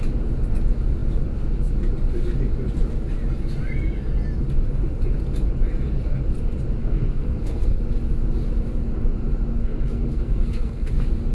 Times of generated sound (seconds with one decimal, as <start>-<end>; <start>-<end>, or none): 6.8-7.8; 9.5-10.9